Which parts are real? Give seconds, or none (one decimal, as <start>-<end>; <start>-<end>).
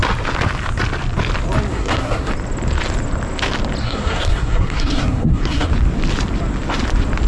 0.0-1.7; 2.3-3.8; 5.7-7.3